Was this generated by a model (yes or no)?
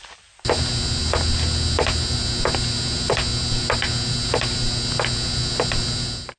no